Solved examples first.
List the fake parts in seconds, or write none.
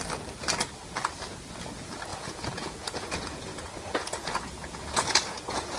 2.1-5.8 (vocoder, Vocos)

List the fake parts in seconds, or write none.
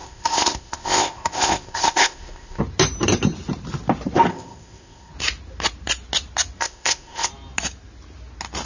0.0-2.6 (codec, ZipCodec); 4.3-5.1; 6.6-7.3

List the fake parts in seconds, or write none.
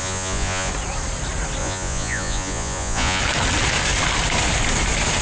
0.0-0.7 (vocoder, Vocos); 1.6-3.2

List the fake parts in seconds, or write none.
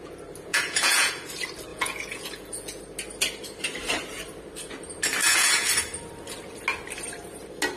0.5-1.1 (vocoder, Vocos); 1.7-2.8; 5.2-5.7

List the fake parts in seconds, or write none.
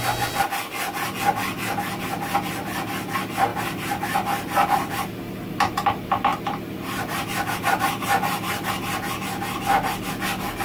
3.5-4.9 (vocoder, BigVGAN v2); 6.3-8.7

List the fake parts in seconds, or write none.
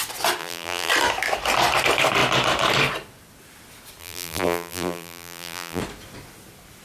0.4-0.9 (vocoder, BigVGAN v2); 4.0-5.8